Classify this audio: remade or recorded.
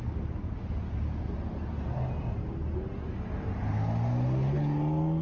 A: recorded